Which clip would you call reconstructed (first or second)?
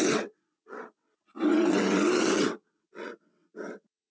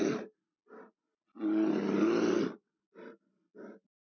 first